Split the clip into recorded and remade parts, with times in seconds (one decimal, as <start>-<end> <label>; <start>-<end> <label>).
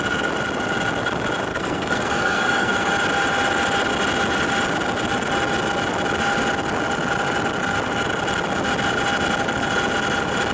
0.0-1.5 recorded; 1.5-2.9 remade; 2.9-10.5 recorded